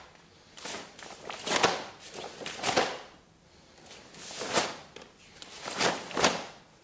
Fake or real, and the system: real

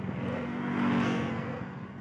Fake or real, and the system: fake, codec, SNAC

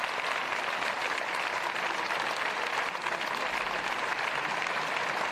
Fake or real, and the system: real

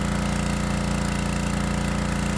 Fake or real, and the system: real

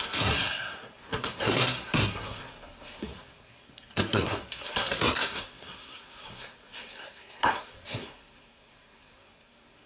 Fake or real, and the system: fake, codec, SNAC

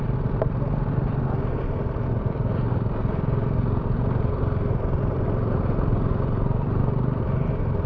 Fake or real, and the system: real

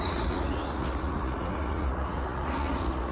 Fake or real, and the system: fake, vocoder, Vocos